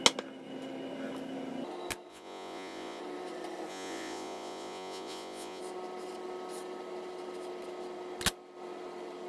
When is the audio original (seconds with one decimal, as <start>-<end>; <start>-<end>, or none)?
0.0-2.1; 3.0-3.7; 5.6-9.3